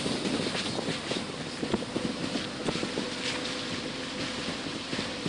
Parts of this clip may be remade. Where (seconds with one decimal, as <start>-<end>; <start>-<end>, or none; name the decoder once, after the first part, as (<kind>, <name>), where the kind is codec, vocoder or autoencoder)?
none